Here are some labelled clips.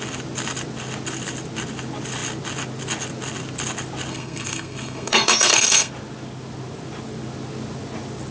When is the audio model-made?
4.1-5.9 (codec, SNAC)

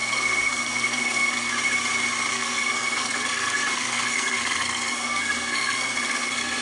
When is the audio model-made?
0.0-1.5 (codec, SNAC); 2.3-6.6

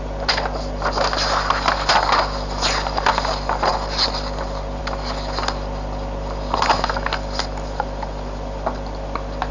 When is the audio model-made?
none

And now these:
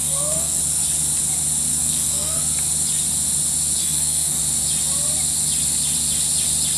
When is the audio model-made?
0.0-0.6 (codec, SNAC); 1.7-2.4; 3.8-4.4

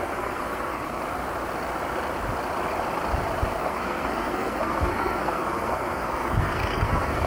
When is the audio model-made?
0.0-1.0 (codec, SNAC); 3.6-7.3

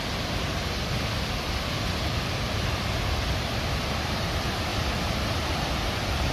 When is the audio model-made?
none

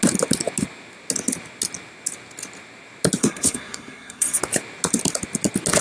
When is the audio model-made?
3.2-4.4 (codec, SNAC)